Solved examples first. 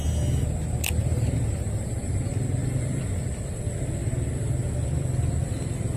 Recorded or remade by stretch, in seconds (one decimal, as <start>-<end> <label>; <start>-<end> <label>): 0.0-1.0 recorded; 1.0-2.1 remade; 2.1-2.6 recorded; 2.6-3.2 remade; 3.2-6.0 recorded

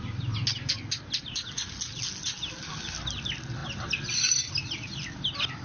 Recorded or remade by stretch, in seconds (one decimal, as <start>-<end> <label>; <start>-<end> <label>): 0.0-5.6 recorded

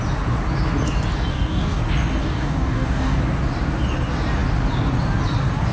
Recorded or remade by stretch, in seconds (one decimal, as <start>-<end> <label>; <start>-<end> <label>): 0.0-1.3 recorded; 1.3-1.8 remade; 1.8-2.2 recorded; 2.2-3.2 remade; 3.2-5.7 recorded

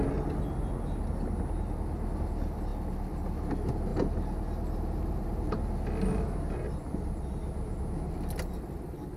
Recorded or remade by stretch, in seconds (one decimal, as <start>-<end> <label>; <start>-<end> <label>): 0.0-9.2 recorded